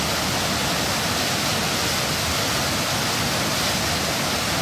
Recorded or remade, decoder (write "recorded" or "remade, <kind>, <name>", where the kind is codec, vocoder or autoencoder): recorded